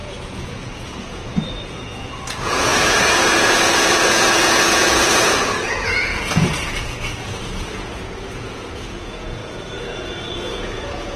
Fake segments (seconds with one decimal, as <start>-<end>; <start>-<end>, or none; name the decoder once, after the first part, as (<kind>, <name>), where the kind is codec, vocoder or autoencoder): 0.0-11.2 (vocoder, Vocos)